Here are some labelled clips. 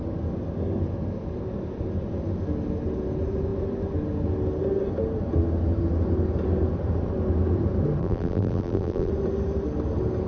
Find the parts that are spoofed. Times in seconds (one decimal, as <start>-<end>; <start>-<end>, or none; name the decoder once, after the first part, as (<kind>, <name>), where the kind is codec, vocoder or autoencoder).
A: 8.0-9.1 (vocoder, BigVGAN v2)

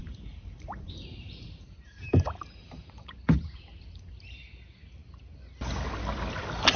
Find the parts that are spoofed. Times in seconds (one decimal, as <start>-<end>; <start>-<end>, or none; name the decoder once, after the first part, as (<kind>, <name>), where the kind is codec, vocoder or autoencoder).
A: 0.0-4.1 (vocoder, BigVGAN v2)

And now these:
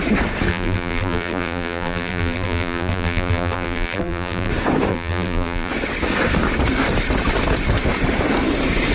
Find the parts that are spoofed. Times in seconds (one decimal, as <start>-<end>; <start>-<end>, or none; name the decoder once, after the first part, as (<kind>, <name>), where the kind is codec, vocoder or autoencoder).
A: 0.5-4.5 (vocoder, BigVGAN v2); 4.9-5.7

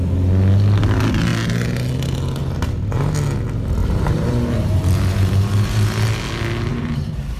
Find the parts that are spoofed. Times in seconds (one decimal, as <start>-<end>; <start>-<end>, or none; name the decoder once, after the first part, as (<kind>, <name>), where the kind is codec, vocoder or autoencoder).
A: 2.4-3.0 (vocoder, BigVGAN v2); 3.8-5.9; 6.7-7.4

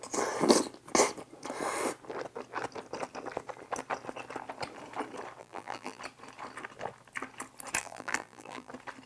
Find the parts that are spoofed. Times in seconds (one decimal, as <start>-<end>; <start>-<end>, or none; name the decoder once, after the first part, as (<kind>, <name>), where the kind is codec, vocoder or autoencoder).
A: 5.4-6.0 (vocoder, BigVGAN v2); 7.8-8.7

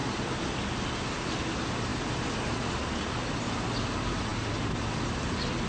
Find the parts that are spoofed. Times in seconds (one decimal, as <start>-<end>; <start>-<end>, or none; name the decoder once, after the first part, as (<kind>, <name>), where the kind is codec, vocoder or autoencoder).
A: 0.0-0.7 (vocoder, BigVGAN v2)